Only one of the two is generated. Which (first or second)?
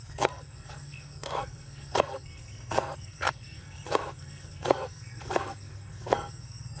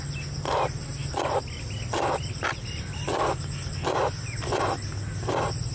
first